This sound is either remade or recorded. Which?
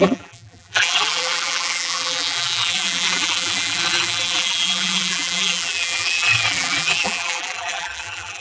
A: remade